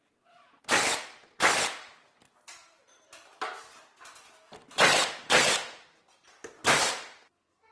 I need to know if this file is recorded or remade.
recorded